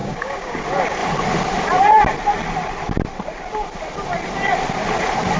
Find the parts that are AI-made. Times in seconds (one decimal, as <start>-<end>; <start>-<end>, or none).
0.0-0.6